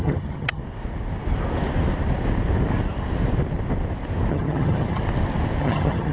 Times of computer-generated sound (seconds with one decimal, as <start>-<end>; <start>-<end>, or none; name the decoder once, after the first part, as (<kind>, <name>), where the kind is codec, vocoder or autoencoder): 0.0-0.6 (vocoder, HiFi-GAN); 4.3-5.0; 5.6-6.1